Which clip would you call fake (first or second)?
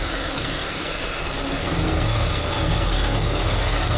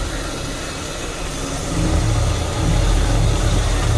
first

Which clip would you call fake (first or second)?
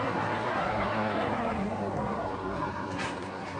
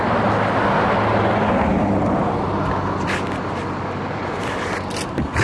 first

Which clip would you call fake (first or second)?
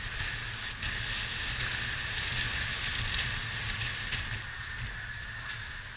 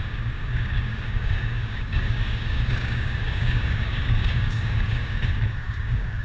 second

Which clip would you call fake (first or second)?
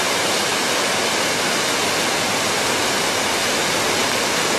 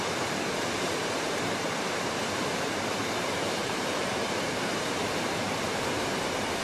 second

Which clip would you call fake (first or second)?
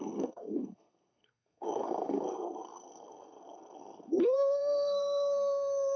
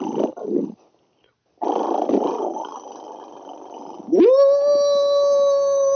first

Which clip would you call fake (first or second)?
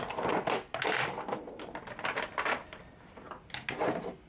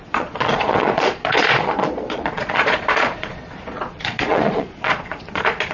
second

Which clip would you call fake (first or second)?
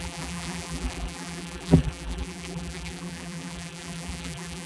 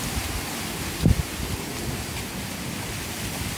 first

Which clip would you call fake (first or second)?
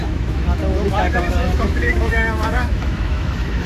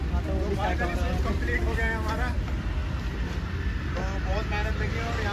first